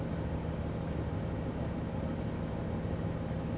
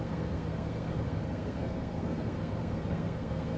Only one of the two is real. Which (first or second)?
first